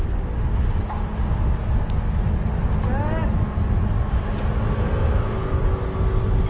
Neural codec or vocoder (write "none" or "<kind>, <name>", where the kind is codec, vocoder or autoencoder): none